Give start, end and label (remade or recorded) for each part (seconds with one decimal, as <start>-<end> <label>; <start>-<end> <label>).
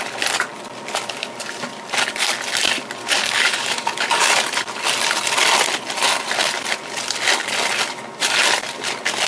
0.0-3.0 recorded; 3.0-4.3 remade; 4.3-9.3 recorded